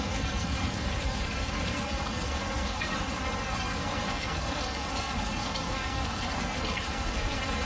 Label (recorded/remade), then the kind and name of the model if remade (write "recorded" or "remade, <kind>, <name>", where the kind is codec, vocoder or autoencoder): remade, codec, SNAC